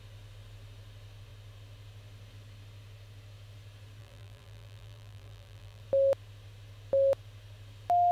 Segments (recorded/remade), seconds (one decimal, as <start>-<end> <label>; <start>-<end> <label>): 0.0-4.0 recorded; 4.0-5.8 remade; 5.8-8.1 recorded